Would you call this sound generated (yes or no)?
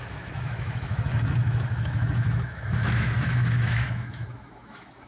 yes